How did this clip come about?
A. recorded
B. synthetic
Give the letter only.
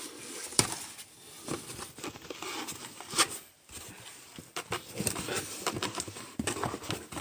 A